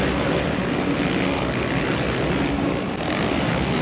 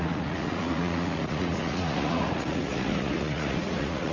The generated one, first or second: second